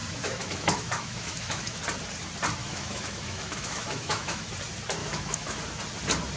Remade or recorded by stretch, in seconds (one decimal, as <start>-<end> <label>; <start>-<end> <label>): 0.0-1.8 remade; 1.8-2.6 recorded; 2.6-4.5 remade; 4.5-5.0 recorded; 5.0-5.6 remade; 5.6-6.4 recorded